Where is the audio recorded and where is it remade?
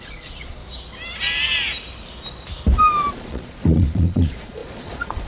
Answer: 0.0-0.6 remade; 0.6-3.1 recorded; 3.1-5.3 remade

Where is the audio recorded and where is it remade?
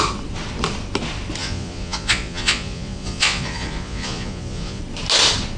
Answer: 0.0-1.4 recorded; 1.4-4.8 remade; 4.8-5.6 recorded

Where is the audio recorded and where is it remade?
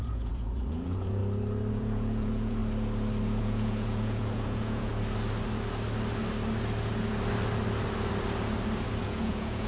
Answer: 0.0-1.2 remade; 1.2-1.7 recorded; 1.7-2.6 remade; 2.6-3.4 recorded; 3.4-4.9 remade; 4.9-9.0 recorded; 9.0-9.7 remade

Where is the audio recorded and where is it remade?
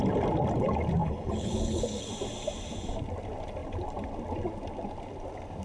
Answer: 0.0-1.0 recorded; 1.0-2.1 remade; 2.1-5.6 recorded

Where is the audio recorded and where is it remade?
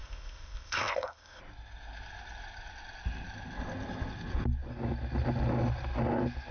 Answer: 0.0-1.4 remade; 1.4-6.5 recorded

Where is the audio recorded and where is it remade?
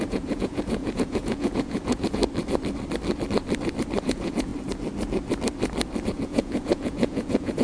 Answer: 0.0-2.2 remade; 2.2-4.0 recorded; 4.0-4.5 remade; 4.5-6.0 recorded; 6.0-7.6 remade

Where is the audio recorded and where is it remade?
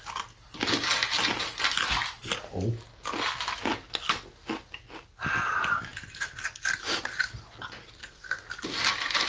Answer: 0.0-8.0 recorded; 8.0-8.5 remade; 8.5-9.3 recorded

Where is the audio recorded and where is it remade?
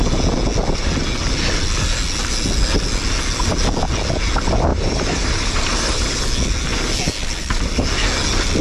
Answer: 0.0-4.7 recorded; 4.7-6.2 remade; 6.2-8.6 recorded